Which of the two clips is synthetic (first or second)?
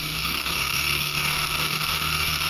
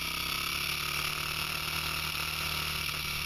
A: first